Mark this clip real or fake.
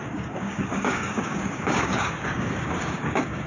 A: fake